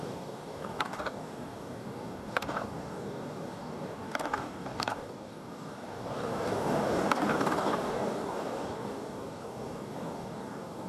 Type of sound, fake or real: fake